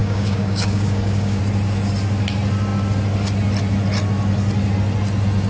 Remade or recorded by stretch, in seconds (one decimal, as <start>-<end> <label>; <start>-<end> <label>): 0.0-1.4 remade; 1.4-5.5 recorded

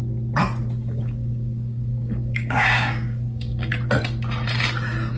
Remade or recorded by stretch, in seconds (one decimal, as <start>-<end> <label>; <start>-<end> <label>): 0.0-0.8 recorded; 0.8-3.7 remade; 3.7-5.2 recorded